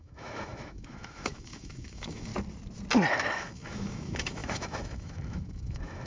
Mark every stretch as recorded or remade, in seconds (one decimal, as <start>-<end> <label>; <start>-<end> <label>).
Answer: 0.0-2.3 remade; 2.3-3.1 recorded; 3.1-6.1 remade